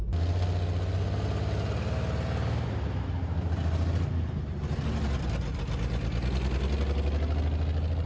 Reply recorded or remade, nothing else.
recorded